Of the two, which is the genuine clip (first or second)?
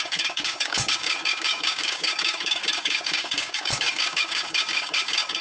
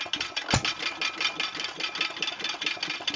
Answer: second